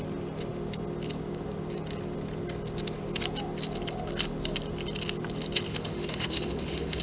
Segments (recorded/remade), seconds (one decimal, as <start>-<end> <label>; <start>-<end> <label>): 0.0-5.7 recorded; 5.7-7.0 remade